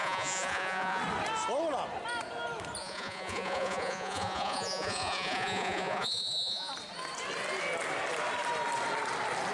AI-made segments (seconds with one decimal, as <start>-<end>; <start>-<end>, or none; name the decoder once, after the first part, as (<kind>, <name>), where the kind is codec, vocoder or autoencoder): 0.0-1.0 (vocoder, Vocos); 2.8-6.7